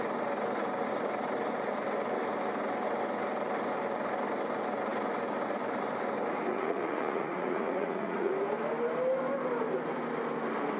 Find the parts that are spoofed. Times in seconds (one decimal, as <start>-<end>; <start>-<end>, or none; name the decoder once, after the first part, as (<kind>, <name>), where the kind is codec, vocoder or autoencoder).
6.5-8.3 (vocoder, Vocos)